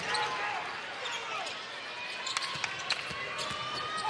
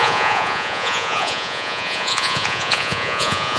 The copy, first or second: second